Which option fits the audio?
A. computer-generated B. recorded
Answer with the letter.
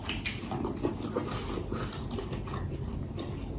B